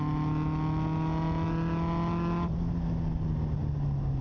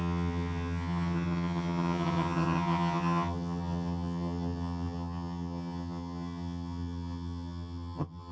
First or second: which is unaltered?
first